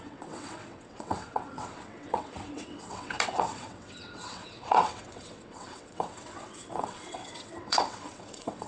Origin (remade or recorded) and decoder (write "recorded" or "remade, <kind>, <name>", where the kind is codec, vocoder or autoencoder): remade, vocoder, WaveNeXt